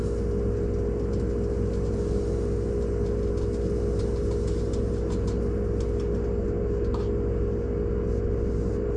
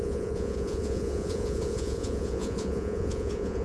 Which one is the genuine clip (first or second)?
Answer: first